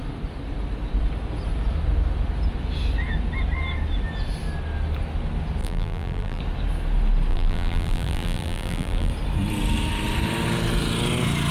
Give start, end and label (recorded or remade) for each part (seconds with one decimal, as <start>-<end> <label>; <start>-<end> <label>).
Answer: 0.0-5.6 recorded; 5.6-6.4 remade; 6.4-7.3 recorded; 7.3-9.1 remade; 9.1-11.5 recorded